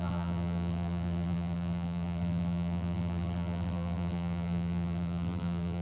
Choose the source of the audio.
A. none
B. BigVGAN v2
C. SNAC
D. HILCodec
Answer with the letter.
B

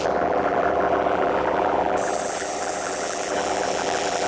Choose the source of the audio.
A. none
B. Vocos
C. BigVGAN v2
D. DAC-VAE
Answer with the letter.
C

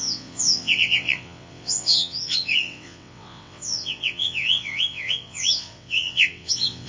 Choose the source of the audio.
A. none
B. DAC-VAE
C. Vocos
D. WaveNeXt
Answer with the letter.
D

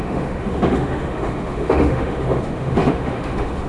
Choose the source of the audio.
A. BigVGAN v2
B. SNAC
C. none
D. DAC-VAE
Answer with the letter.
D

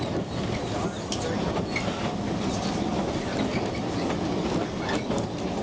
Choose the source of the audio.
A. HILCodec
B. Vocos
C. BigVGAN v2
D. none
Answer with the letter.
D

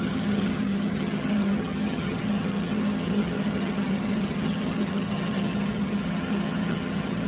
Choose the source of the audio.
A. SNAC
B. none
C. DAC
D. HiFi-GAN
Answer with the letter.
D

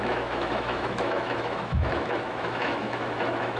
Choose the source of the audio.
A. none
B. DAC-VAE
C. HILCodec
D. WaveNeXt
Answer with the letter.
B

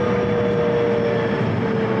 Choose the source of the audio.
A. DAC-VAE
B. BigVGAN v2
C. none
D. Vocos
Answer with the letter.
C